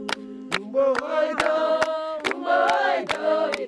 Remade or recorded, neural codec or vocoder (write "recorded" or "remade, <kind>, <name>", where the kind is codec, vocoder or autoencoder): recorded